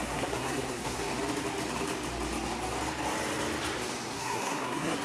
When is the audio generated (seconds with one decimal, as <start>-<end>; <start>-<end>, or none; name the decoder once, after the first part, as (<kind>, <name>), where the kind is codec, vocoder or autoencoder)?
0.0-1.1 (codec, SNAC); 4.1-5.0